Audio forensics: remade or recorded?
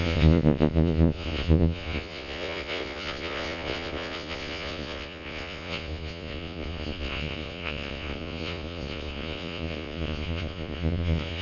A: remade